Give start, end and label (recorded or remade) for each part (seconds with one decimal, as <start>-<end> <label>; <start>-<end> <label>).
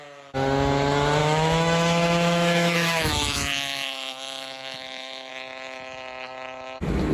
0.0-1.2 recorded; 1.2-5.3 remade; 5.3-7.1 recorded